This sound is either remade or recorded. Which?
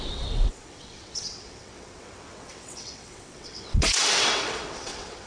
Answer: remade